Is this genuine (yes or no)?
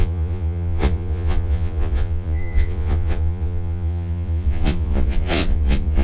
no